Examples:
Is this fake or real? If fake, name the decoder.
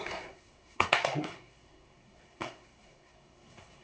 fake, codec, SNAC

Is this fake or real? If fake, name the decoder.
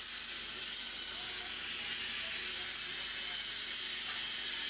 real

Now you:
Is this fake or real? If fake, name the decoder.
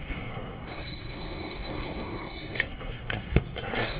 fake, codec, SNAC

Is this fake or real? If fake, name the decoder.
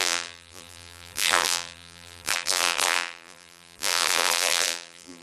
fake, vocoder, BigVGAN v2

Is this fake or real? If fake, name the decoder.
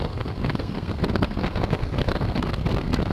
fake, codec, SNAC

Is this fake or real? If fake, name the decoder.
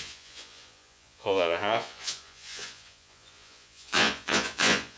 fake, vocoder, Vocos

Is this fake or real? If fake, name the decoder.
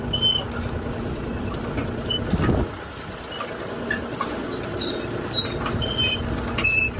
real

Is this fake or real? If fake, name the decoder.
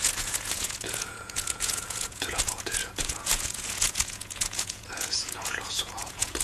fake, vocoder, Vocos